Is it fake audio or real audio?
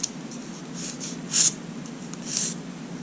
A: real